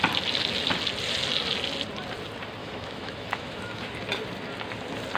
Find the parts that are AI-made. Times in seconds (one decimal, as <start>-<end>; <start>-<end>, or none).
2.6-3.9